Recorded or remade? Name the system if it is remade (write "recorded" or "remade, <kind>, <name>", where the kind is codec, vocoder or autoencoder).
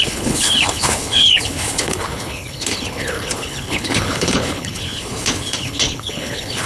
remade, codec, HILCodec